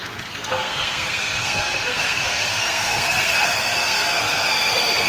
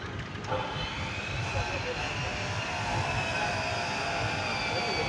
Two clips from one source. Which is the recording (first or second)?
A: second